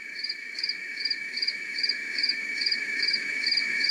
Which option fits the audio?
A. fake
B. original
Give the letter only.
A